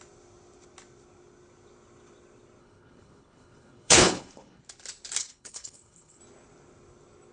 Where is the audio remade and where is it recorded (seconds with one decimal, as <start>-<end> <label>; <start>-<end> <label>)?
0.0-2.6 recorded; 2.6-4.6 remade; 4.6-5.2 recorded; 5.2-6.2 remade; 6.2-7.3 recorded